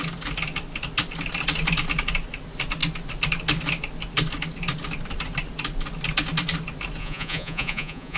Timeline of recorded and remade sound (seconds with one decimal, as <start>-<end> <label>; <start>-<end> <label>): 0.0-7.0 recorded; 7.0-8.2 remade